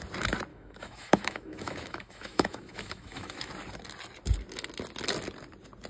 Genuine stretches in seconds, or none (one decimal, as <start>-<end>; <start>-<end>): 0.0-0.5; 3.5-5.9